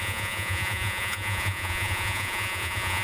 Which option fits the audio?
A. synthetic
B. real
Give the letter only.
A